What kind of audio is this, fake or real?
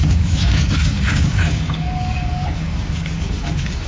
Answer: fake